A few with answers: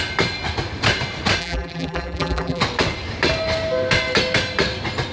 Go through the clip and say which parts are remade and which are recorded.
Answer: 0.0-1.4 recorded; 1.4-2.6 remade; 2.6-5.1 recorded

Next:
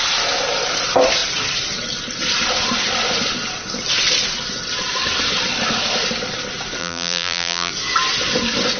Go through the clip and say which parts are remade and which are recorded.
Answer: 0.0-6.8 recorded; 6.8-7.7 remade; 7.7-8.8 recorded

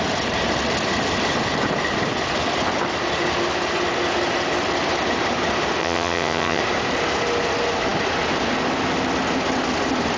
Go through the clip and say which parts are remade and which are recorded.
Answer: 0.0-5.8 recorded; 5.8-6.6 remade; 6.6-10.2 recorded

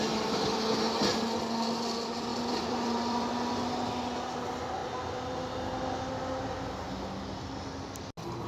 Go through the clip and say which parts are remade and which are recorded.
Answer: 0.0-2.3 recorded; 2.3-3.3 remade; 3.3-8.5 recorded

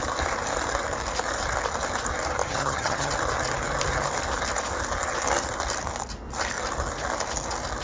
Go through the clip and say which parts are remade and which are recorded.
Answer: 0.0-2.4 recorded; 2.4-3.1 remade; 3.1-7.8 recorded

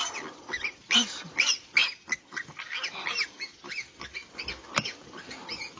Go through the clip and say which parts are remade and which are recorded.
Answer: 0.0-5.8 recorded